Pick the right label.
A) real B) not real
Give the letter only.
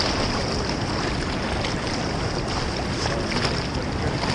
A